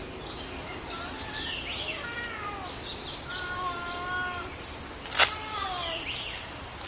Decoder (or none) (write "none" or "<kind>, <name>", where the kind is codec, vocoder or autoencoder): none